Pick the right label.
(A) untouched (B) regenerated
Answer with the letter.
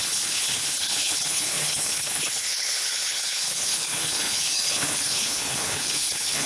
B